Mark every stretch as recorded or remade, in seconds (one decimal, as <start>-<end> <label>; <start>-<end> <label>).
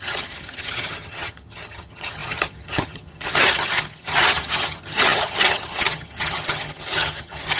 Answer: 0.0-7.6 remade